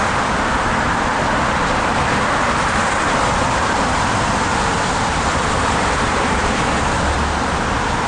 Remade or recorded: remade